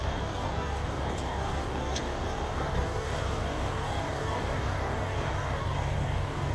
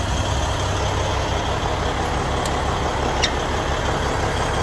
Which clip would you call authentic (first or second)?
second